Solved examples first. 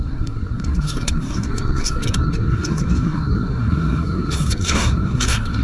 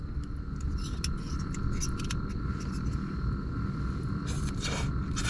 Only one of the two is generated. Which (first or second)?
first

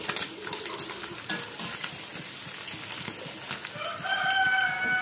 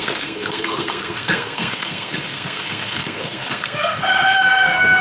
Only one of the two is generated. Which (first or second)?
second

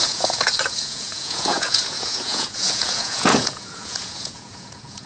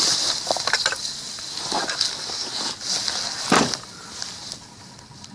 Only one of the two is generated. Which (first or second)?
first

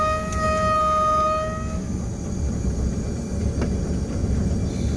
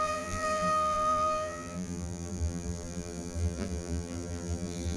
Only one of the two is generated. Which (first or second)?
second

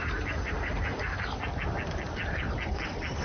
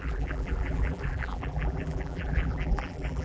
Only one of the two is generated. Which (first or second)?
second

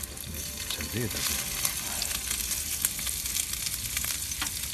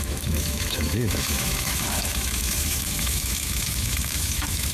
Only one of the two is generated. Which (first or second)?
second